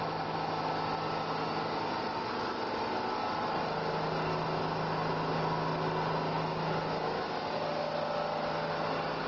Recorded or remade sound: recorded